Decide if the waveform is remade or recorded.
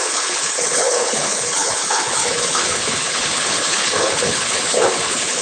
remade